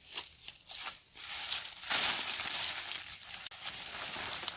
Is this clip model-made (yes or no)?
no